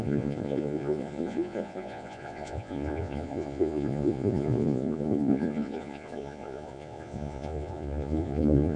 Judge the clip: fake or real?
fake